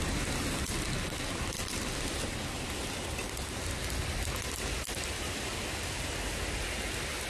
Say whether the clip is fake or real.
real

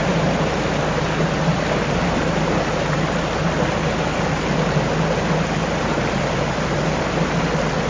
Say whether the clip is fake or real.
real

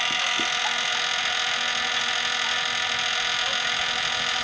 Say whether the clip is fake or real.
real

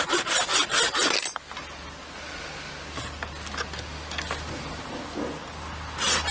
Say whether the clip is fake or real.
real